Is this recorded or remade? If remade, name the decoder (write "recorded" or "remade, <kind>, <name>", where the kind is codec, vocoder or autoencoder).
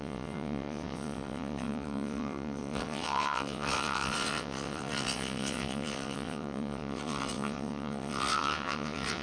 remade, vocoder, WaveNeXt